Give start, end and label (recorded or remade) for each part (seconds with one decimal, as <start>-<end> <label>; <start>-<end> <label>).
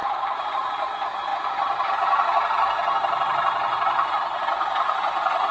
0.0-0.9 remade; 0.9-1.3 recorded; 1.3-1.9 remade; 1.9-5.5 recorded